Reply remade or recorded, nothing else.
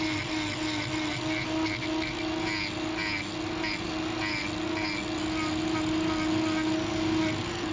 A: recorded